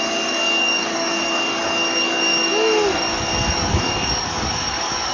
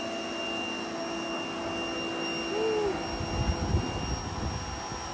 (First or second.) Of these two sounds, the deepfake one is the first